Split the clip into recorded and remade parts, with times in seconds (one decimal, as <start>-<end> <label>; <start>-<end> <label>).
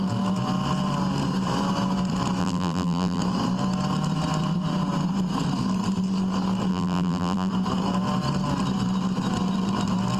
0.0-2.4 recorded; 2.4-3.2 remade; 3.2-6.7 recorded; 6.7-7.5 remade; 7.5-10.2 recorded